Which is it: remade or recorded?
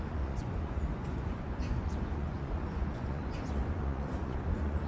remade